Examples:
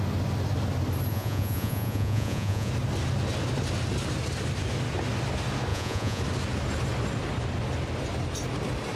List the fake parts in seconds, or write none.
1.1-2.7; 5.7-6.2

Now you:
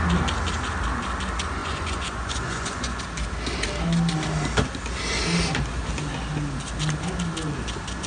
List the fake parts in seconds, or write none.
1.6-3.0